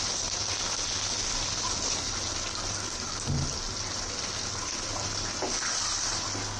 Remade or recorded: recorded